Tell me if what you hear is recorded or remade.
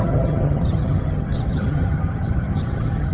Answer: remade